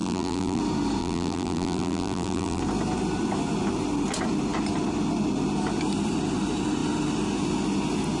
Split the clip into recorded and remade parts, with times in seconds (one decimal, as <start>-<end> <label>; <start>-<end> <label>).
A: 0.0-0.6 remade; 0.6-1.0 recorded; 1.0-2.6 remade; 2.6-8.2 recorded